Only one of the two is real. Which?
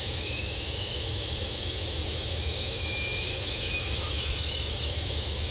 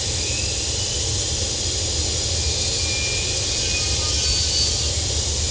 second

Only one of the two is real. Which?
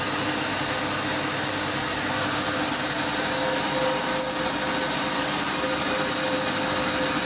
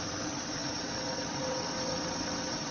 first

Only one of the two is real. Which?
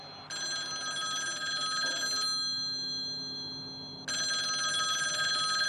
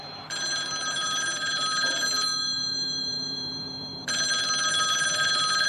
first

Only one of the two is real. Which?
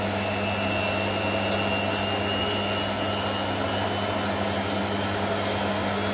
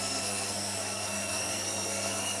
first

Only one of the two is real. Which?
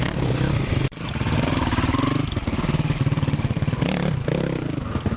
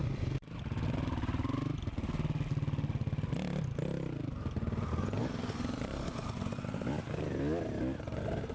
second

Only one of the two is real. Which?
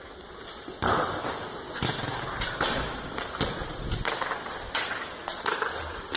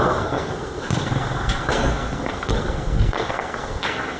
first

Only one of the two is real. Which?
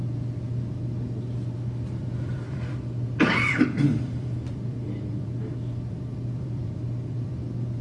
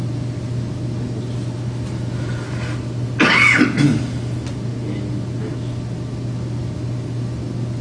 second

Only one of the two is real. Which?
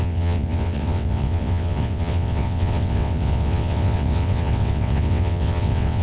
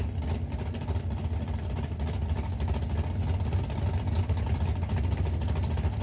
second